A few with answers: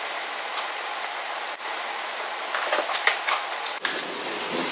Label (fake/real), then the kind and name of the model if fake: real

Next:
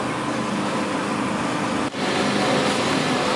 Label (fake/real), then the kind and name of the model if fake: real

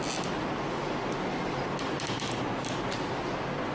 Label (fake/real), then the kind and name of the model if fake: real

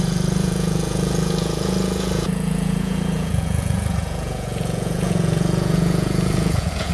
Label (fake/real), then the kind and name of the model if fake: fake, vocoder, Vocos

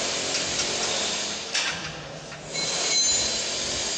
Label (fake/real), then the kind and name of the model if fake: real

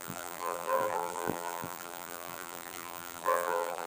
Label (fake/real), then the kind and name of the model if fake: fake, vocoder, BigVGAN v2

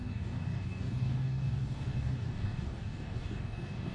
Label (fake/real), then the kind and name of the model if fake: fake, codec, DAC